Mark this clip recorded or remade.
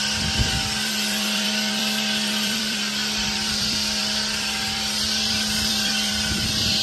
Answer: remade